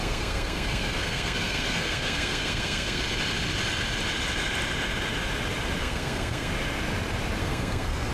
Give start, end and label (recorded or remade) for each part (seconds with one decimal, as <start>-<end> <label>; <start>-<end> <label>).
0.0-3.0 remade; 3.0-5.8 recorded; 5.8-6.5 remade; 6.5-7.4 recorded; 7.4-8.1 remade